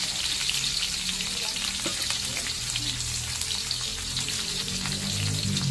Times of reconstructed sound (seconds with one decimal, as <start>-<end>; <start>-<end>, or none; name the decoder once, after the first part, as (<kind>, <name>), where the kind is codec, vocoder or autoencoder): 1.9-2.6 (vocoder, BigVGAN v2); 3.9-4.7